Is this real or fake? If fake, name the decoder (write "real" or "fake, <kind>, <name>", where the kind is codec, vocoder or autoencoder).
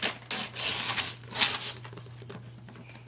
real